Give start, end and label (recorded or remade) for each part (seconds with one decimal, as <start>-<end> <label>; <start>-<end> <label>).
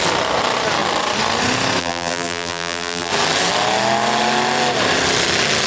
0.0-1.8 recorded; 1.8-3.1 remade; 3.1-5.7 recorded